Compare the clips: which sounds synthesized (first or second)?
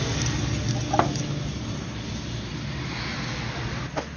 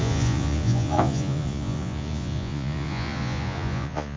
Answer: second